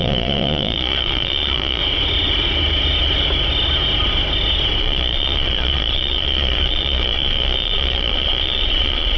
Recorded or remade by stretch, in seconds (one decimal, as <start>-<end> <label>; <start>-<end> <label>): 0.0-1.8 remade; 1.8-4.8 recorded; 4.8-9.2 remade